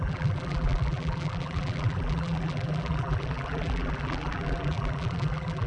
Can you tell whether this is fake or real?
fake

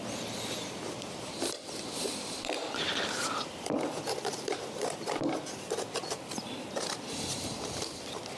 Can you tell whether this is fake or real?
fake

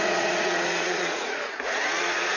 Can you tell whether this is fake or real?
fake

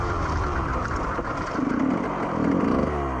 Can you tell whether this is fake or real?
fake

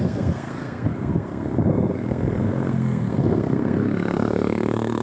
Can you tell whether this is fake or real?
fake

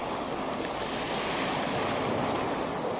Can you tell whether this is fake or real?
real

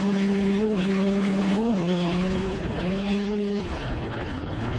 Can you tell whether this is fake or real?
fake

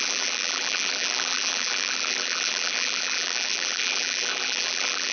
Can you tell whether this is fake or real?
fake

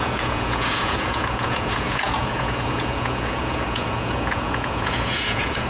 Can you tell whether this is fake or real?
fake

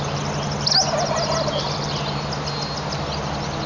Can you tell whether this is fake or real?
real